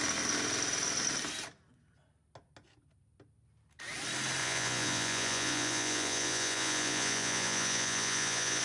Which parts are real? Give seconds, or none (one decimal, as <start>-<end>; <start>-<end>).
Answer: 0.0-4.4